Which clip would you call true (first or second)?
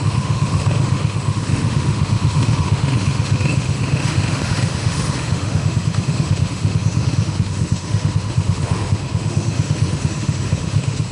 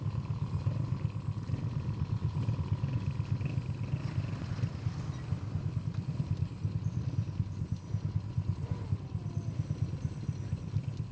second